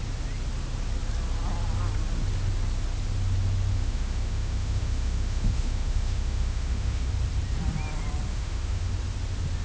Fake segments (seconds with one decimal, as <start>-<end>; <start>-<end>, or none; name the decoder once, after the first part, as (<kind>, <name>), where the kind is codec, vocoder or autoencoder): 3.7-7.1 (autoencoder, DAC-VAE); 8.3-8.9